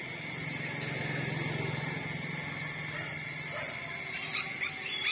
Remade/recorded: recorded